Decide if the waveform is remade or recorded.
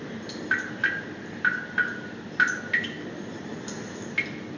recorded